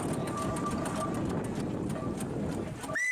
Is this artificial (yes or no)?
no